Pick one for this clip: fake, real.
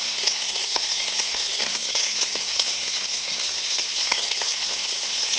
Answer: fake